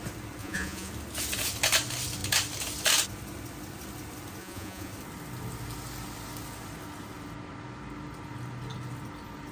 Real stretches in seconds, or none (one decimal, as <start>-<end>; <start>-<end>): 0.0-0.4; 0.9-4.4; 4.9-9.5